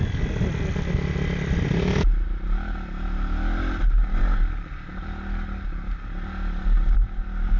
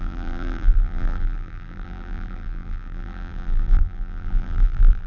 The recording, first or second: first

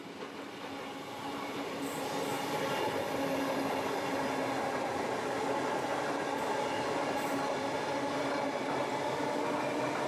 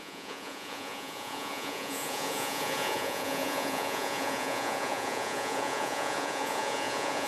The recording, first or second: first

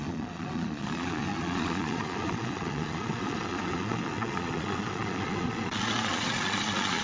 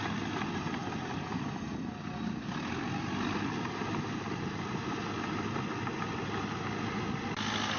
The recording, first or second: second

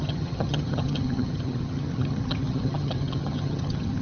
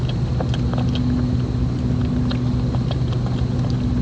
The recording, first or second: second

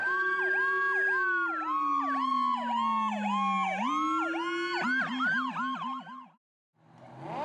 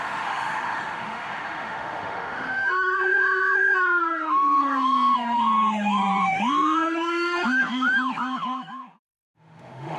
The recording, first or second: first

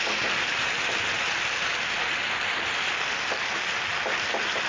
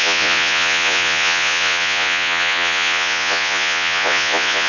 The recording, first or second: first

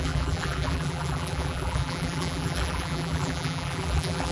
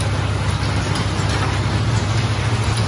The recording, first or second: second